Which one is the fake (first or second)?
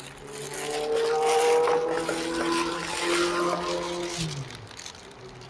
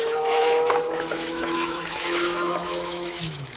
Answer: second